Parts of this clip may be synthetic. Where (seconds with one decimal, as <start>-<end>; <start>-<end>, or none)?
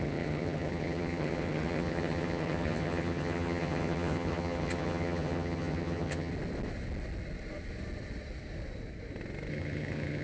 0.0-6.3; 9.5-10.2